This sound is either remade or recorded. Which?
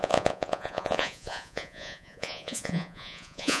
remade